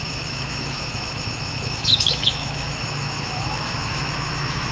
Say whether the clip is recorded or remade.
remade